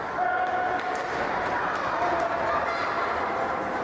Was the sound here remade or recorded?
recorded